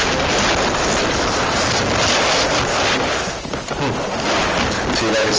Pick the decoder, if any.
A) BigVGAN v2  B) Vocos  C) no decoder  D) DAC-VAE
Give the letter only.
C